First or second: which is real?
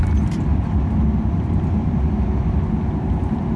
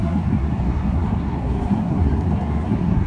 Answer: first